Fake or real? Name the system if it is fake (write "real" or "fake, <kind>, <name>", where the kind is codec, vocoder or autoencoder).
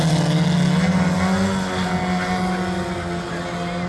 real